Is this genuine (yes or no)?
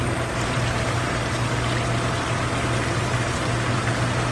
yes